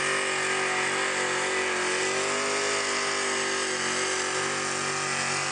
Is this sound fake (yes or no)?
no